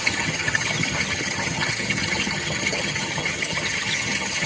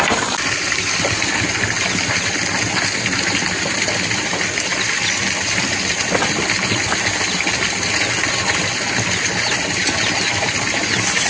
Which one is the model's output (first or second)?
first